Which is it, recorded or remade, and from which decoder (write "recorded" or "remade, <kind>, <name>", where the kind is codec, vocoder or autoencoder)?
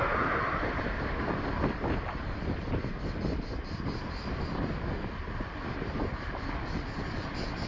recorded